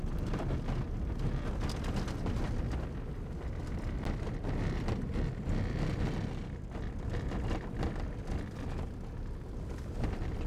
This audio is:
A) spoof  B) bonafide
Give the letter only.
B